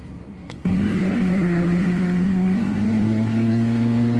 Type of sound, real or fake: fake